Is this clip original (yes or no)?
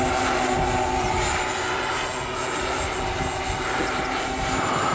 yes